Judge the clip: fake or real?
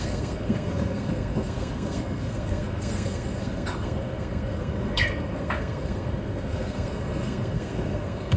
fake